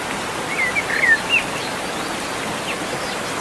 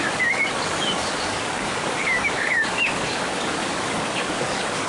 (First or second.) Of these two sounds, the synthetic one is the second